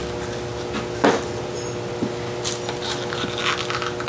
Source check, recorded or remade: recorded